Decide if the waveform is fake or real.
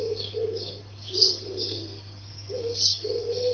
fake